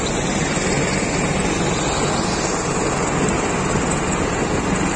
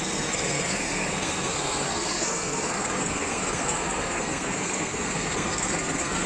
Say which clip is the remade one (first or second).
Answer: second